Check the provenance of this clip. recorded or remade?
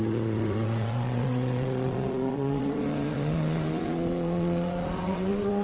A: remade